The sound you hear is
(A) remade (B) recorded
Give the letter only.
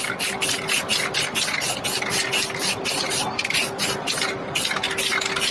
B